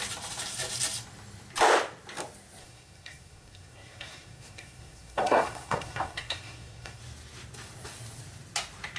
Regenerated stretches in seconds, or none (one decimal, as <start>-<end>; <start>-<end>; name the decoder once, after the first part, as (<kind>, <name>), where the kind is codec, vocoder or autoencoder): 2.6-7.0 (codec, SNAC)